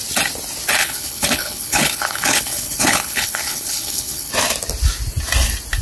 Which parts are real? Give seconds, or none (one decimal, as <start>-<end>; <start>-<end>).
0.0-0.8; 4.3-5.8